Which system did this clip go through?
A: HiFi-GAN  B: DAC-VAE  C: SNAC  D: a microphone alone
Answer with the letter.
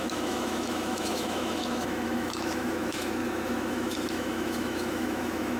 B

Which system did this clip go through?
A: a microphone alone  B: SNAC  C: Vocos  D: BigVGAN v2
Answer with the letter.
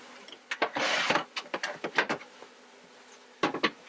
A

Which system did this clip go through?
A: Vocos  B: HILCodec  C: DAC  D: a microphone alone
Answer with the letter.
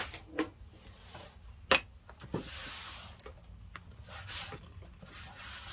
D